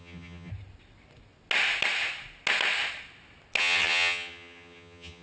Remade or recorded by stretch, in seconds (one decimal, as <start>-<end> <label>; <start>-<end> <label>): 0.0-0.5 remade; 0.5-3.6 recorded; 3.6-5.2 remade